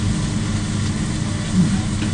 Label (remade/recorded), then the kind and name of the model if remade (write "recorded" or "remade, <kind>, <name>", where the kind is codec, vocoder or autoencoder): recorded